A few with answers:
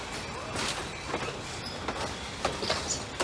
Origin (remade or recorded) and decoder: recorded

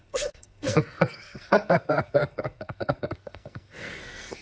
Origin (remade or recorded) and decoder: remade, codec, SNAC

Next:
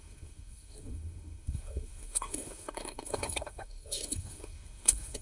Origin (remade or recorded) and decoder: remade, codec, SNAC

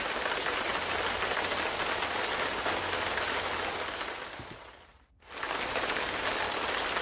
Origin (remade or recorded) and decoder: recorded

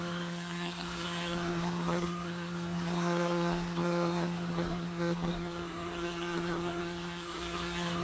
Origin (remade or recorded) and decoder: remade, codec, SNAC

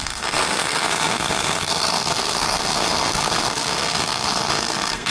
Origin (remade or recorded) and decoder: remade, codec, SNAC